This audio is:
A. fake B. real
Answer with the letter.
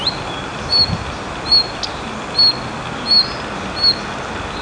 B